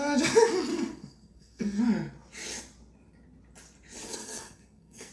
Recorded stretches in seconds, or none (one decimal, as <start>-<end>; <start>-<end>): 0.0-0.7; 1.8-4.1